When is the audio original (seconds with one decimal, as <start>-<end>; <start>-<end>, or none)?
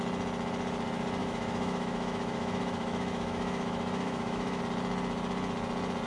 0.0-1.2; 4.6-6.1